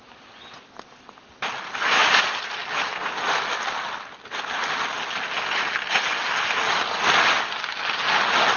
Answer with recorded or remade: recorded